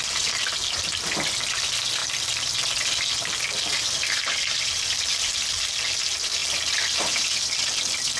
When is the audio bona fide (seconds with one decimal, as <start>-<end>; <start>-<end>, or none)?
0.0-8.2